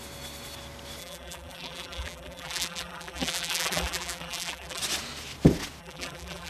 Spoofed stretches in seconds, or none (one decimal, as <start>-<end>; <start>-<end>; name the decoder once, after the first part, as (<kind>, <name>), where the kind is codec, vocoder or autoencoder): 1.0-4.8 (vocoder, BigVGAN v2); 5.8-6.5